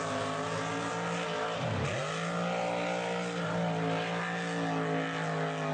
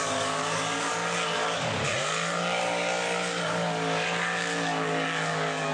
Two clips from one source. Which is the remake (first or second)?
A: second